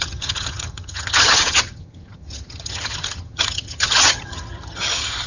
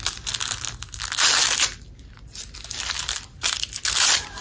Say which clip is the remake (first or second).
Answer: first